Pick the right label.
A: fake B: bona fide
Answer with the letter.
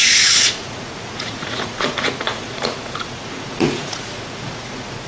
A